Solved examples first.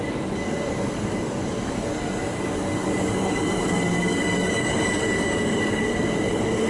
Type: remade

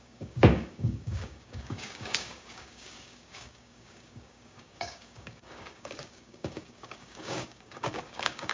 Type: remade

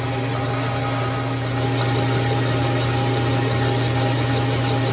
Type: recorded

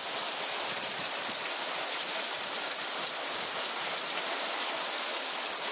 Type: recorded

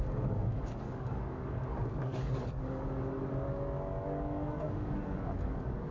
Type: remade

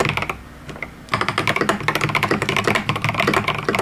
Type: recorded